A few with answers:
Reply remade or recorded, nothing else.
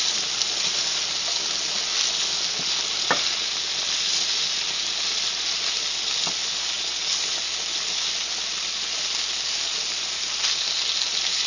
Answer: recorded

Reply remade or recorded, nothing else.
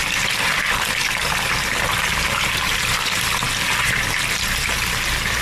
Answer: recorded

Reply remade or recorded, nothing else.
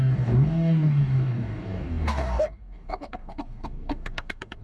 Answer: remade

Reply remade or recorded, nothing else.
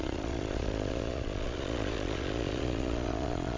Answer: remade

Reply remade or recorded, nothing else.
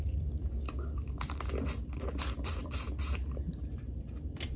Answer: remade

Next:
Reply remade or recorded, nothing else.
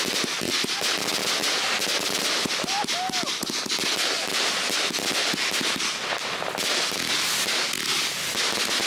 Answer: recorded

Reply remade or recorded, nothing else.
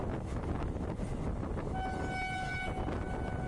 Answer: recorded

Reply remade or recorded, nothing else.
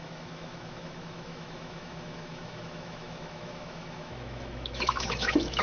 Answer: remade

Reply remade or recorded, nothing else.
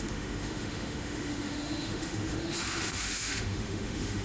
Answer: remade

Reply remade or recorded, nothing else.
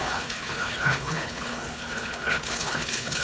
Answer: remade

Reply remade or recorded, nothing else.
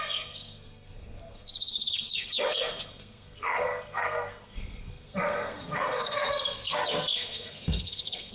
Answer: remade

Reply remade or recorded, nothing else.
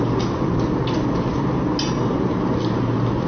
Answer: recorded